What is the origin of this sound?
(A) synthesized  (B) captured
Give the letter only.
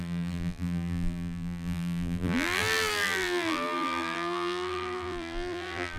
A